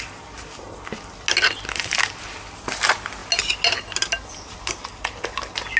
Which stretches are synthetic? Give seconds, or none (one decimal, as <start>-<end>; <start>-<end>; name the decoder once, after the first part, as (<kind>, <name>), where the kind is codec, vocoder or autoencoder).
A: none